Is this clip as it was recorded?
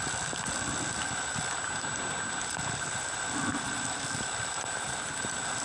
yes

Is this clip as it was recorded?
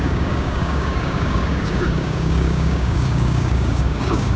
no